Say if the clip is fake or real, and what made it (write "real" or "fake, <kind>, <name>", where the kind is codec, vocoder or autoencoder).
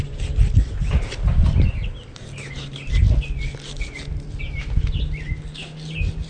real